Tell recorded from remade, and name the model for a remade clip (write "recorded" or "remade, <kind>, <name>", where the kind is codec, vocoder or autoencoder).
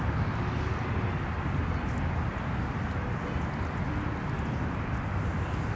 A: recorded